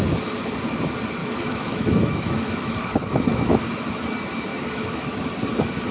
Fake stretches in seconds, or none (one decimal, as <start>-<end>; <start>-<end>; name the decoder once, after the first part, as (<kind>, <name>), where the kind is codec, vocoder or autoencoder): 1.2-3.6 (autoencoder, DAC-VAE); 4.5-5.3